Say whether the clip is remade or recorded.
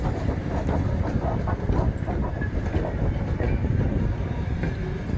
recorded